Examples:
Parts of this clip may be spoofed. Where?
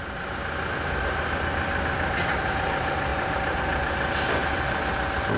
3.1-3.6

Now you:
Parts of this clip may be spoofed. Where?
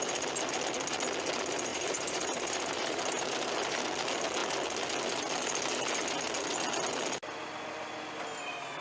1.7-3.5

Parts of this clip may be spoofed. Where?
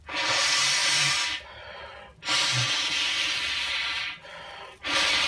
none